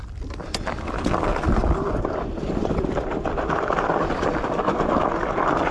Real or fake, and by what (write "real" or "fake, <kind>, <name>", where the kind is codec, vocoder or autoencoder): fake, vocoder, BigVGAN v2